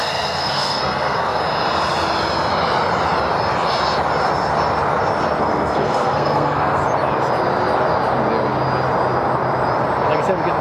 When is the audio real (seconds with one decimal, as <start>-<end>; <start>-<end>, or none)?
1.4-5.4; 6.8-10.6